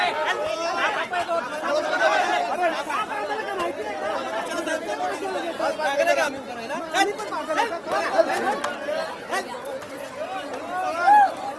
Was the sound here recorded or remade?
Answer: recorded